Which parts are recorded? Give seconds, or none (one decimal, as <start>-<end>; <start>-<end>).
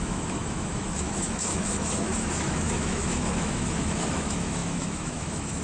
none